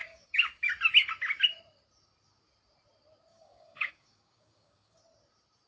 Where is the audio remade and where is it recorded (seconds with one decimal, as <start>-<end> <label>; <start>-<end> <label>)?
0.0-0.7 remade; 0.7-3.3 recorded; 3.3-5.0 remade; 5.0-5.7 recorded